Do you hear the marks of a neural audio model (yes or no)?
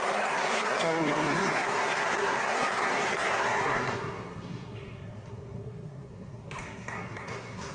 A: yes